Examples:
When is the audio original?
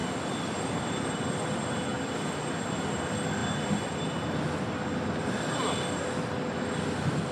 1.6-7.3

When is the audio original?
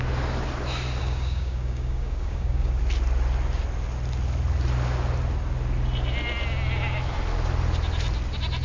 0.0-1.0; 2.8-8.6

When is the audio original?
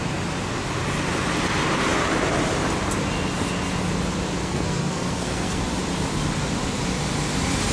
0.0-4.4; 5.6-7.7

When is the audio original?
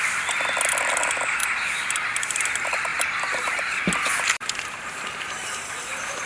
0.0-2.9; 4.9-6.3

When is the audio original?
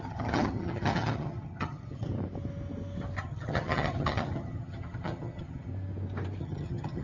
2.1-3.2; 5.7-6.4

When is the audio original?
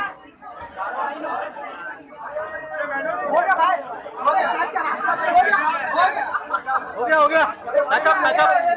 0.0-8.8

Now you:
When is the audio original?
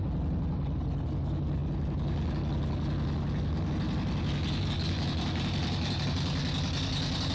0.0-7.3